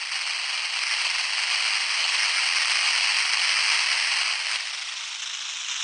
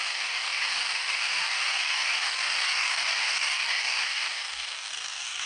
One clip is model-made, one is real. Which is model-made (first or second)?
second